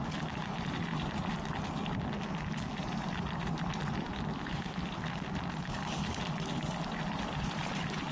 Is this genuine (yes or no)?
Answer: yes